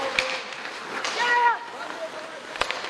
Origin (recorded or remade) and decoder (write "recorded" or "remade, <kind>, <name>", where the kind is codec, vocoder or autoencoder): remade, vocoder, BigVGAN v2